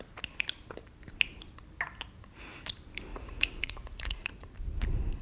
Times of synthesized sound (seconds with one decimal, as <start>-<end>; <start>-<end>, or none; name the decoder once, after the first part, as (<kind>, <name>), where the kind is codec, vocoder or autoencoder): 3.1-4.3 (vocoder, Vocos)